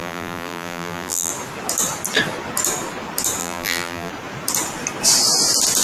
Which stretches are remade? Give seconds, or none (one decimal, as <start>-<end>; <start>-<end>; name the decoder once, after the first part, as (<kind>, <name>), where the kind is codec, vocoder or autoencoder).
0.0-1.3 (vocoder, BigVGAN v2); 3.4-4.1